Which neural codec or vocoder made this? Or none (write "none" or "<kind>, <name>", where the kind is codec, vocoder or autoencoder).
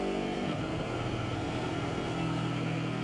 codec, SNAC